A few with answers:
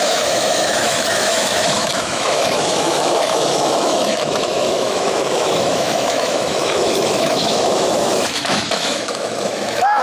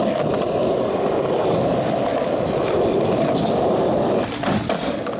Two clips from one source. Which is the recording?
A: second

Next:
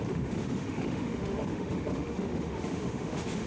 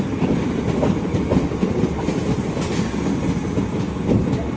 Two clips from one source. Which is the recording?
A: second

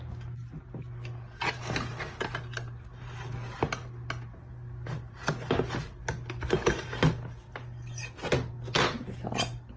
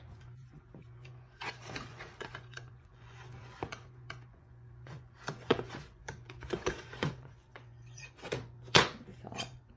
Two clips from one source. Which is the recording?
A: first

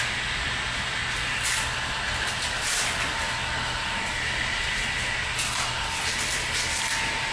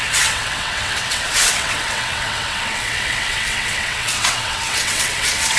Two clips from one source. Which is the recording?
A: first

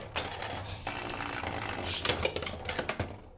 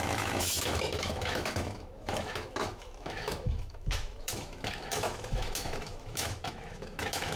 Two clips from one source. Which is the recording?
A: first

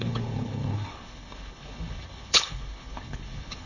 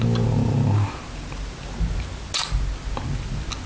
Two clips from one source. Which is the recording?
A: second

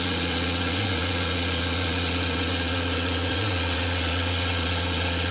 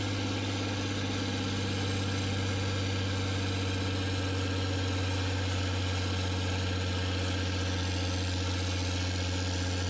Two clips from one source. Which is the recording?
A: second